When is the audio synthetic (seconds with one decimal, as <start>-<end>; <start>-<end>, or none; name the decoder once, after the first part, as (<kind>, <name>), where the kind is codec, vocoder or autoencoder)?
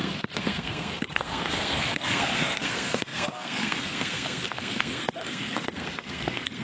0.0-6.6 (codec, SNAC)